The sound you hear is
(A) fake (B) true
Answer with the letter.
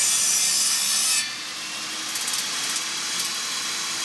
B